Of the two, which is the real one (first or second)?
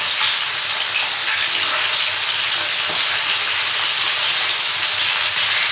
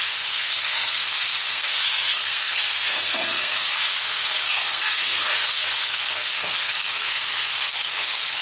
first